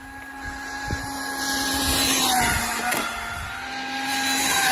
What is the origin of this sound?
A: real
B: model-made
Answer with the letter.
A